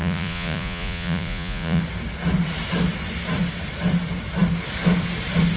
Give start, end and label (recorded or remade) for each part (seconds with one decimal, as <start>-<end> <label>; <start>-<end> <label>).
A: 0.0-1.8 remade; 1.8-5.6 recorded